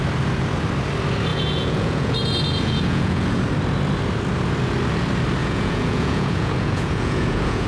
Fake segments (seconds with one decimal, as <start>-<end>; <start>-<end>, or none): 1.3-3.4; 5.4-7.7